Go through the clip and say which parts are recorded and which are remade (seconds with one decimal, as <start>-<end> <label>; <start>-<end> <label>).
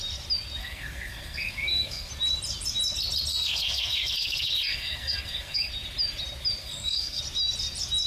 0.0-0.6 recorded; 0.6-2.1 remade; 2.1-3.3 recorded; 3.3-5.7 remade; 5.7-6.6 recorded; 6.6-7.2 remade; 7.2-8.1 recorded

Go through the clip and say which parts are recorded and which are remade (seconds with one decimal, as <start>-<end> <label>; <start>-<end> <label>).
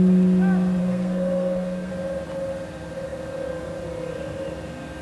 0.0-0.8 recorded; 0.8-1.9 remade; 1.9-5.0 recorded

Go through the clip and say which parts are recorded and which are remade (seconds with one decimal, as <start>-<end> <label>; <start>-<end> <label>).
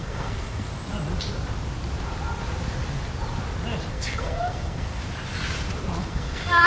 0.0-0.7 remade; 0.7-3.9 recorded; 3.9-5.0 remade; 5.0-6.0 recorded; 6.0-6.7 remade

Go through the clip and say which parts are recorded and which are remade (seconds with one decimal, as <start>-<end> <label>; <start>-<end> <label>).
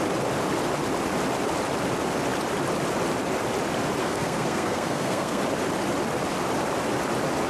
0.0-4.0 recorded; 4.0-5.4 remade; 5.4-7.5 recorded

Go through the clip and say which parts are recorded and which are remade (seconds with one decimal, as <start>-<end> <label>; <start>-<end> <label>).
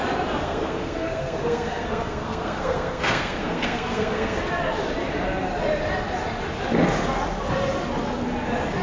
0.0-0.4 recorded; 0.4-4.4 remade; 4.4-8.8 recorded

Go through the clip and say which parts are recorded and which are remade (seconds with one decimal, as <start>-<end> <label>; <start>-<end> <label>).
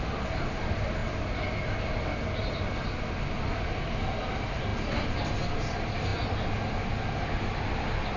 0.0-8.2 recorded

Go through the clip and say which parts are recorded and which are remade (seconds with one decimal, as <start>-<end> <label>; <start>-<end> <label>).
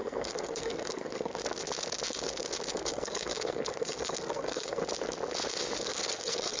0.0-1.4 remade; 1.4-2.7 recorded; 2.7-4.8 remade; 4.8-5.8 recorded; 5.8-6.6 remade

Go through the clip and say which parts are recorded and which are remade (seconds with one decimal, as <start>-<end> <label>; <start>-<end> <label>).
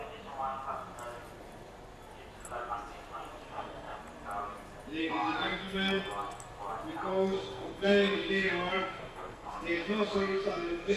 0.0-3.4 recorded; 3.4-4.0 remade; 4.0-5.0 recorded; 5.0-6.0 remade; 6.0-7.1 recorded; 7.1-11.0 remade